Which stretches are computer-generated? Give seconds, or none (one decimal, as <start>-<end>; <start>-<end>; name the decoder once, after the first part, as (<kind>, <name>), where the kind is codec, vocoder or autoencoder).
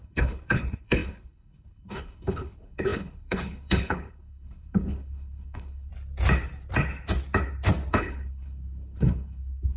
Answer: 0.0-5.9 (codec, HILCodec); 7.9-9.8